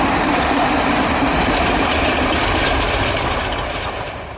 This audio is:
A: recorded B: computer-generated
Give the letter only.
B